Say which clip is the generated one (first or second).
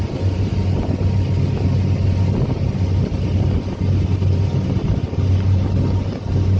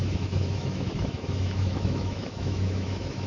second